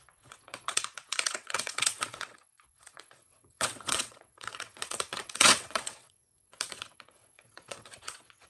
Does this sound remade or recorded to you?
remade